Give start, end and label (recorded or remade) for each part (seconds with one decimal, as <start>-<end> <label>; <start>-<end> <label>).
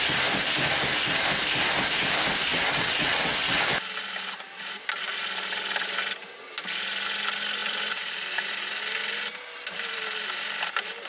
0.0-2.5 recorded; 2.5-3.6 remade; 3.6-11.1 recorded